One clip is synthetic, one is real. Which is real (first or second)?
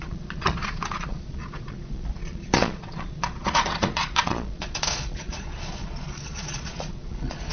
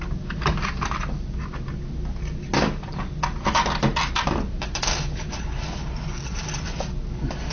second